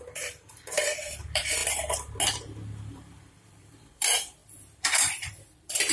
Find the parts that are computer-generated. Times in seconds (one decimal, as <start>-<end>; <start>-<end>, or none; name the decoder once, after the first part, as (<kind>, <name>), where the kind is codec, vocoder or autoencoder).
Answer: 0.0-1.6 (vocoder, BigVGAN v2); 2.9-5.9